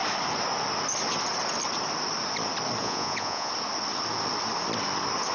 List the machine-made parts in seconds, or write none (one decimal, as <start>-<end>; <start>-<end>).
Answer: 2.8-3.5